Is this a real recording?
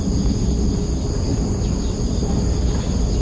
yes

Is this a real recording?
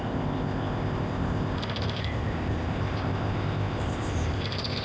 no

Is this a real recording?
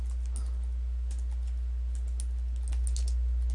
yes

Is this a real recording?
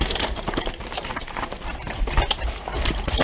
no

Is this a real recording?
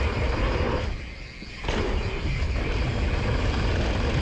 yes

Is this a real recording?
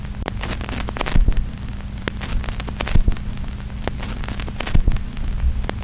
no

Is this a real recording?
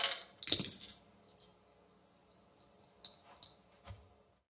yes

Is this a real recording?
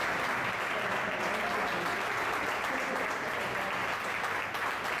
yes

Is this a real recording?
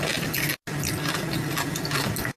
yes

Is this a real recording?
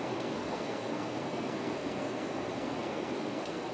no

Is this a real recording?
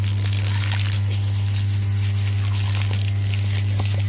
yes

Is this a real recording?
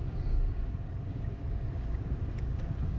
no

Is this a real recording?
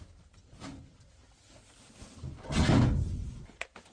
yes